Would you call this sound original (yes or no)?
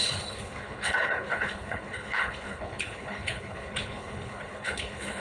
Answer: no